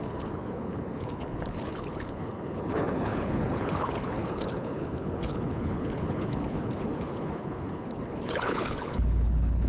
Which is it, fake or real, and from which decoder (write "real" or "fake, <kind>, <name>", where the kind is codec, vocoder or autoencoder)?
fake, codec, HILCodec